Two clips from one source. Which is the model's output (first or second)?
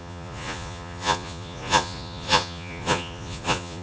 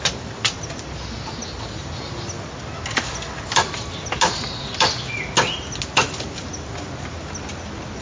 first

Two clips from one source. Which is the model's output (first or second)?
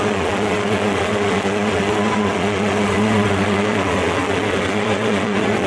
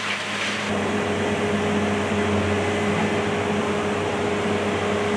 first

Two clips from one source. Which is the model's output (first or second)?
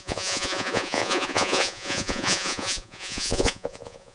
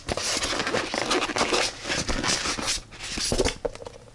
first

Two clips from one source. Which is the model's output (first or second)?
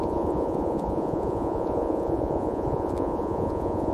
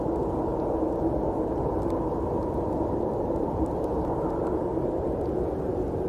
first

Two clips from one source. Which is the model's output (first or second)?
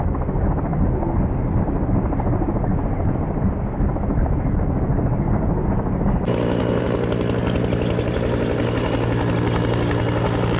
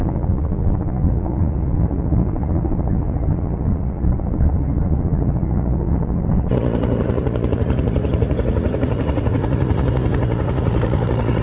second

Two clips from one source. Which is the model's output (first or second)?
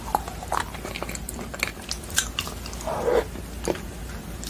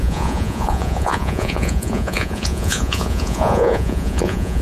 second